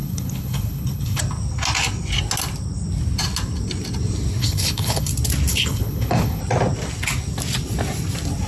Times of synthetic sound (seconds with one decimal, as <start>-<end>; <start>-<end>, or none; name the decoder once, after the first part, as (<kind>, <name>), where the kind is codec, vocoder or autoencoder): 0.0-1.2 (codec, HILCodec); 4.4-5.1; 5.5-6.4